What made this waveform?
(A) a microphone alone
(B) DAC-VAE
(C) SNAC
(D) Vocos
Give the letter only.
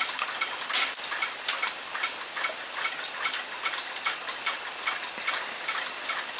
A